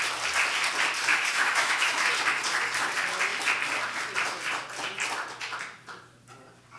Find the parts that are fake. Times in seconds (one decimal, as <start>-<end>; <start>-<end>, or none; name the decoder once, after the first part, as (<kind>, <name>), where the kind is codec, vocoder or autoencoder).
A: 1.1-2.1 (autoencoder, DAC-VAE)